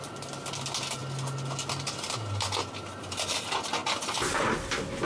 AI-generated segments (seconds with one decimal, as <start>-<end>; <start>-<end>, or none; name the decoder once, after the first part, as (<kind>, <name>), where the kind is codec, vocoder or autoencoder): none